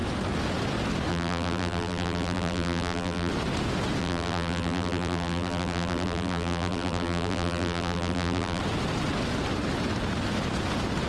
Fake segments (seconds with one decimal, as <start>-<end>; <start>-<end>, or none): 1.1-3.3; 4.0-8.6